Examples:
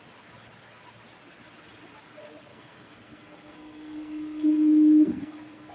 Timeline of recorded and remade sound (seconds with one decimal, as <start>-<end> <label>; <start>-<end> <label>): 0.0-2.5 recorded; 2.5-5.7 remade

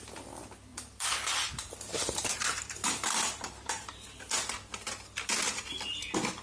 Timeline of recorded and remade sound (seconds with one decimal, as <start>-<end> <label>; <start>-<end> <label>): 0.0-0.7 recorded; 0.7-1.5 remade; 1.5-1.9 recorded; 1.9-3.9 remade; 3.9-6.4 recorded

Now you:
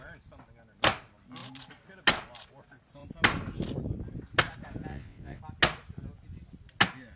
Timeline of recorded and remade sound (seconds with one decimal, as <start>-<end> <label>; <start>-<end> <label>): 0.0-4.9 recorded; 4.9-5.4 remade; 5.4-7.2 recorded

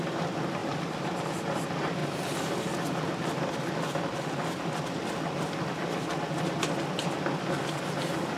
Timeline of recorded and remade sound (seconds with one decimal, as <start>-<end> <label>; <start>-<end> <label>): 0.0-0.6 recorded; 0.6-1.3 remade; 1.3-8.4 recorded

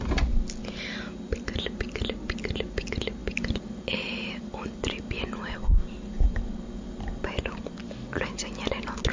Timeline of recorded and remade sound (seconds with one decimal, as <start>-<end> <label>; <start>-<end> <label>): 0.0-9.1 recorded